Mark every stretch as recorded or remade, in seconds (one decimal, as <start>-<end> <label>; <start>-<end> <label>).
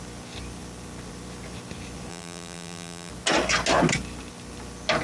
0.0-2.1 recorded; 2.1-3.1 remade; 3.1-5.0 recorded